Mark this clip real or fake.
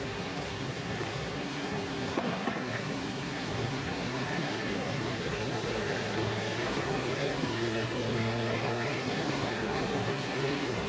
fake